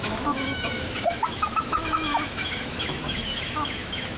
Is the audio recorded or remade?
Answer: remade